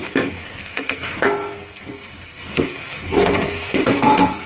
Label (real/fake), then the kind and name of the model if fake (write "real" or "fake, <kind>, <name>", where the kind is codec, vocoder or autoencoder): fake, codec, SNAC